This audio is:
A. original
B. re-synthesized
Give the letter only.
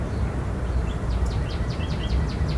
A